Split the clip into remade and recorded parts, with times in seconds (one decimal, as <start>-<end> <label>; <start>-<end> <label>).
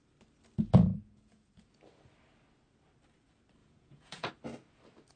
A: 0.0-0.9 recorded; 0.9-1.7 remade; 1.7-3.6 recorded; 3.6-4.3 remade; 4.3-5.2 recorded